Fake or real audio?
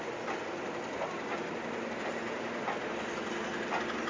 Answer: real